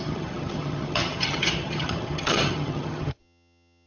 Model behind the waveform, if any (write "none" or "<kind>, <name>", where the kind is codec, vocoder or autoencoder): vocoder, HiFi-GAN